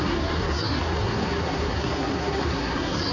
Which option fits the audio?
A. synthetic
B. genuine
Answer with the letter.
A